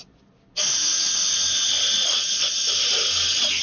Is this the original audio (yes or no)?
yes